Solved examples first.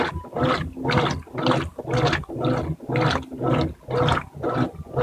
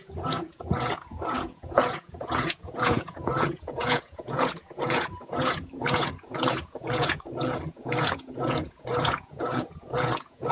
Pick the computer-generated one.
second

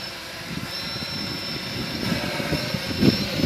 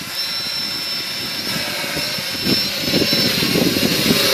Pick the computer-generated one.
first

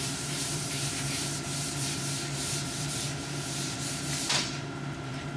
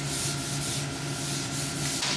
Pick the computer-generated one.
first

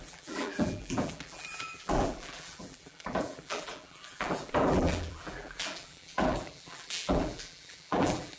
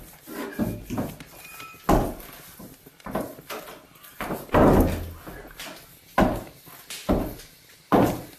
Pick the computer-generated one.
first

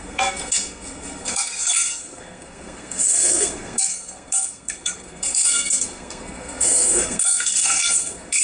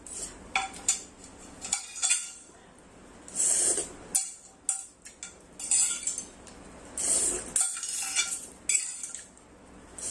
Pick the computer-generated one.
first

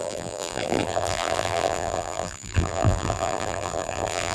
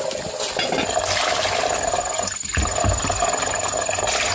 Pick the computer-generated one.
first